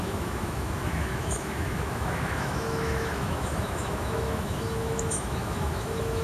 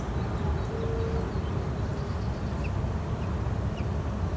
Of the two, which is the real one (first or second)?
second